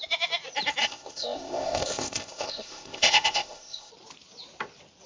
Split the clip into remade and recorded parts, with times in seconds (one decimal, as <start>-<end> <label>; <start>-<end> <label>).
0.0-0.8 recorded; 0.8-3.9 remade; 3.9-5.1 recorded

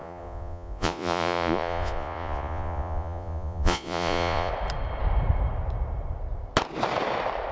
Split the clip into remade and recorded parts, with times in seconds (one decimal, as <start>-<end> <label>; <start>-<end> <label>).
0.0-4.5 remade; 4.5-7.5 recorded

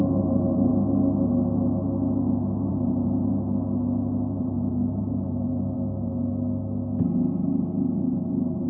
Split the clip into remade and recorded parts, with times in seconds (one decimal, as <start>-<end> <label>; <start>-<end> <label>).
0.0-0.7 remade; 0.7-2.7 recorded; 2.7-3.2 remade; 3.2-4.4 recorded; 4.4-6.3 remade; 6.3-8.0 recorded; 8.0-8.7 remade

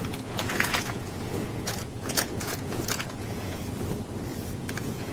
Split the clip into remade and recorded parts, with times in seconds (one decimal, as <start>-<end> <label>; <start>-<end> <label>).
0.0-3.6 remade; 3.6-4.5 recorded; 4.5-5.1 remade

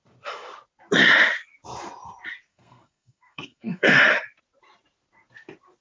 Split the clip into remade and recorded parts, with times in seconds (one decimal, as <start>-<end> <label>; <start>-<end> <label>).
0.0-2.5 recorded; 2.5-4.1 remade; 4.1-5.8 recorded